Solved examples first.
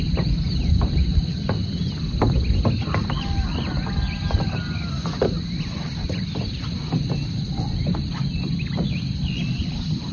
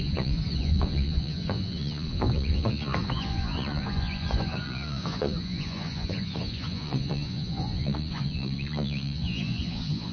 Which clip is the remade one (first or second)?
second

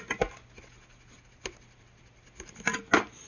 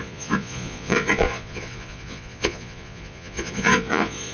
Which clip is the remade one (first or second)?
second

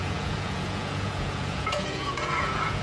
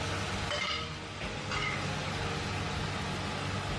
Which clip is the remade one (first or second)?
first